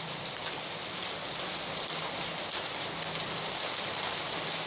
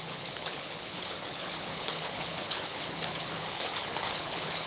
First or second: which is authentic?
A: first